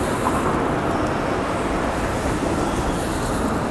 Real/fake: real